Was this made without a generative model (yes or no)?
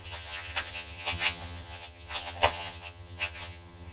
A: no